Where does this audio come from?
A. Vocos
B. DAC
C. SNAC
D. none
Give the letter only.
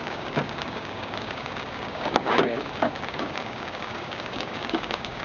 B